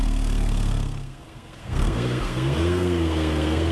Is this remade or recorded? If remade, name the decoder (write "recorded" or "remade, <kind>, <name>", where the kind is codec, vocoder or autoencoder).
remade, codec, SNAC